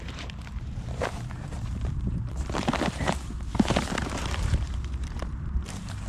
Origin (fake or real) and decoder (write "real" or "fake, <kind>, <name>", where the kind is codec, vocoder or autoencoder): fake, vocoder, BigVGAN v2